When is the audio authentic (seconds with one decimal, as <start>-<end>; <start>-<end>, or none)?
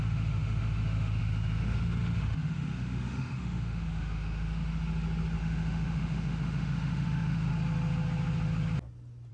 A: 4.6-5.4; 7.5-9.3